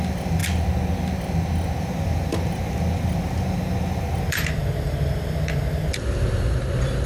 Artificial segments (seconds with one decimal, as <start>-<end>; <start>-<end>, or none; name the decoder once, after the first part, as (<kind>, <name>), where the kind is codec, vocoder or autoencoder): 0.0-0.4 (vocoder, BigVGAN v2); 1.8-7.1